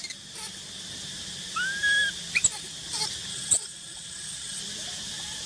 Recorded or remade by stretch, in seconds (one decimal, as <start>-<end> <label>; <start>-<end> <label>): 0.0-3.3 recorded; 3.3-4.6 remade; 4.6-5.5 recorded